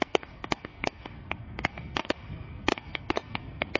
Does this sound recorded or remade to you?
remade